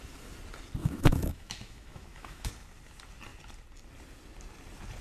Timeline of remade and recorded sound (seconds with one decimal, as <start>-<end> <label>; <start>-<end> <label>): 0.0-0.8 recorded; 0.8-2.5 remade; 2.5-5.0 recorded